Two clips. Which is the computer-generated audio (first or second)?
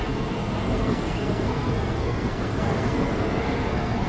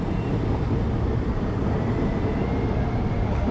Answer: first